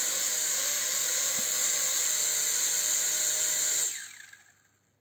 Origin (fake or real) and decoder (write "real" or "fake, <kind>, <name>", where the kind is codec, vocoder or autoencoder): real